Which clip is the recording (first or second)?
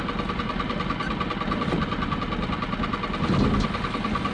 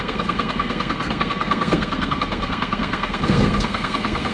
first